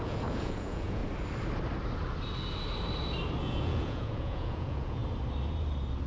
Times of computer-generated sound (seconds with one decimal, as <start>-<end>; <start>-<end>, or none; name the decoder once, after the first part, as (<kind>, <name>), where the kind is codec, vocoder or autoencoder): 0.0-1.0 (vocoder, Vocos); 3.4-5.0